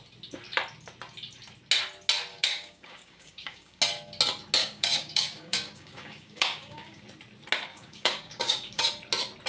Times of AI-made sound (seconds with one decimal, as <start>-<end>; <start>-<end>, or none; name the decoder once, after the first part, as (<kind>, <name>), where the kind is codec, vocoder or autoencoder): 2.3-3.8 (codec, DAC); 4.6-7.0; 7.7-8.8